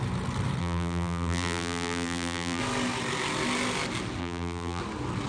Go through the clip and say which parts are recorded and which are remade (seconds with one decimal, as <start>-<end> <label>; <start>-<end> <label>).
0.0-0.6 recorded; 0.6-2.6 remade; 2.6-4.2 recorded; 4.2-4.8 remade; 4.8-5.3 recorded